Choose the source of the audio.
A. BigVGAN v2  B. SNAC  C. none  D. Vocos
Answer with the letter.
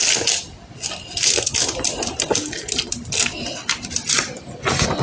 C